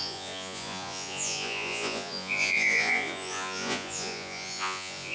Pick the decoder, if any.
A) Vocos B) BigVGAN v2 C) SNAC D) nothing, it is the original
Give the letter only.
A